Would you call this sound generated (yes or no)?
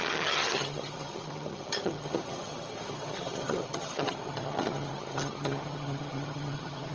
yes